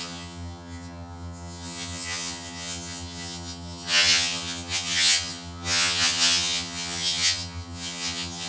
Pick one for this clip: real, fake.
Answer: fake